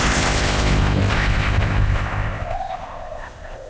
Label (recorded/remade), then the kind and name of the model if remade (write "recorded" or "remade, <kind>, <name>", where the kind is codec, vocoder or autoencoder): remade, codec, ZipCodec